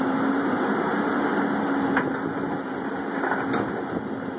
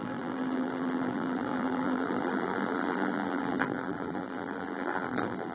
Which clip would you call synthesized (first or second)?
second